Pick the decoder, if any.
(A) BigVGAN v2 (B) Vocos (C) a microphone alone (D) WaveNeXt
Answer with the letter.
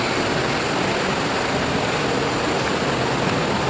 C